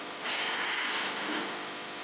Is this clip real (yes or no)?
yes